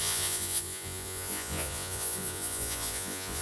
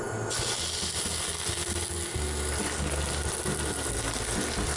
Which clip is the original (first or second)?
second